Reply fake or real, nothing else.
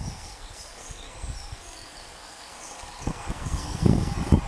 fake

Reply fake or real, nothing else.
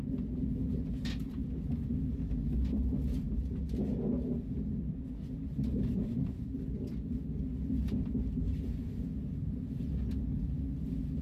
real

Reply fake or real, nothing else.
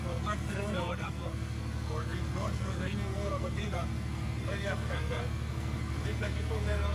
fake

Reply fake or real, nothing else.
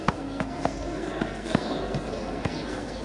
fake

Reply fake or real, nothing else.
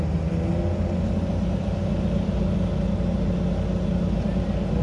real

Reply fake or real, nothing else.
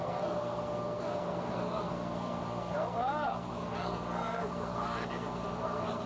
fake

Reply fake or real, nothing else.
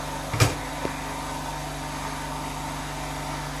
real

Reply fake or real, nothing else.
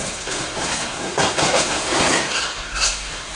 fake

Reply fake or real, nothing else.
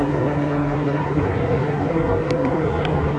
fake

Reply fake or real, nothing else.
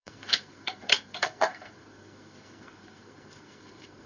fake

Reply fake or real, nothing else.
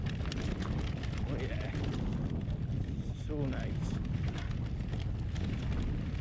real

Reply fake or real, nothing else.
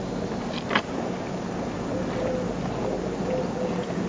real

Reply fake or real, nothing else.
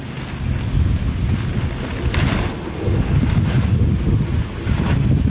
real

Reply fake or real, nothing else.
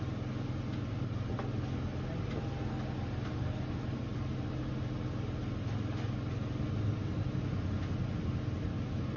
real